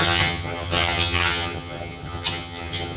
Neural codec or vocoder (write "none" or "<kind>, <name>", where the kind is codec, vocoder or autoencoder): vocoder, HiFi-GAN